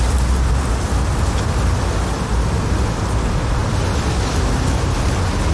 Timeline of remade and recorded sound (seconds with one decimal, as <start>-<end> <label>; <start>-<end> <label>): 0.0-5.5 recorded